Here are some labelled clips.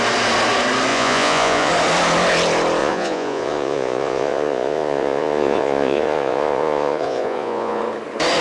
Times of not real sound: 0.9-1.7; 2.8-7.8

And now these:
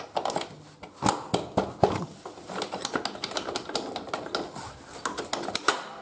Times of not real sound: none

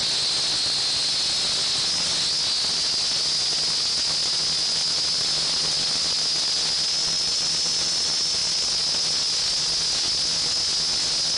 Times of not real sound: none

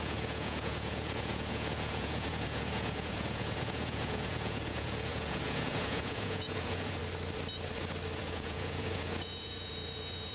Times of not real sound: 0.0-7.0; 8.2-10.3